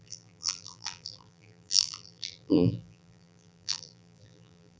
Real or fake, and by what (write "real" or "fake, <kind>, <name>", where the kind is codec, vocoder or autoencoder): fake, vocoder, BigVGAN v2